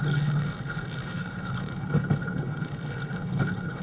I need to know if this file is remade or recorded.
remade